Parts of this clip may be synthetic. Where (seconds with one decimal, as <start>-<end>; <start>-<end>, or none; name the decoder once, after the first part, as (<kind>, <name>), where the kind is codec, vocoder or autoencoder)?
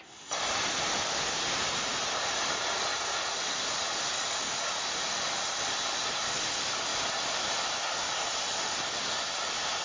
6.9-8.0 (vocoder, BigVGAN v2)